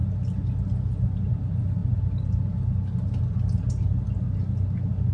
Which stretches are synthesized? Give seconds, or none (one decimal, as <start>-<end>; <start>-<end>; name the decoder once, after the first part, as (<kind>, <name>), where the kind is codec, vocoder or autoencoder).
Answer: none